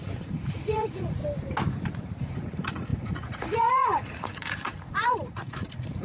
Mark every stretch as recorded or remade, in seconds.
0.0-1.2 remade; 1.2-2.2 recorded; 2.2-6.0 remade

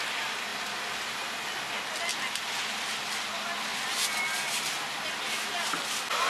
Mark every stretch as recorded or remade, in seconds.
0.0-6.3 recorded

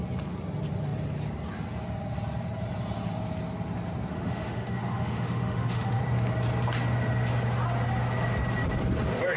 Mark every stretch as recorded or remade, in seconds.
0.0-4.1 recorded; 4.1-6.0 remade; 6.0-9.4 recorded